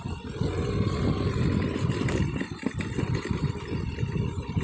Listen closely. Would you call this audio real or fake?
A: real